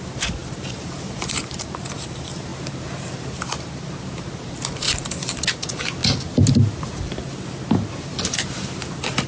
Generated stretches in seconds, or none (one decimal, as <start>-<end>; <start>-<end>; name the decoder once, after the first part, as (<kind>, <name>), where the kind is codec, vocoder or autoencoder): 0.0-6.0 (vocoder, BigVGAN v2); 8.0-9.3